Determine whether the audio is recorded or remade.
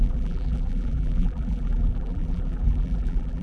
remade